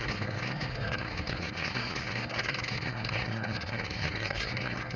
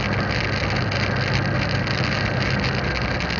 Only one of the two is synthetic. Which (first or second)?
first